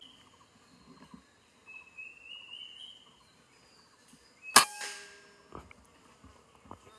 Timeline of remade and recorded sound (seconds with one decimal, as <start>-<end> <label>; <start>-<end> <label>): 0.0-7.0 recorded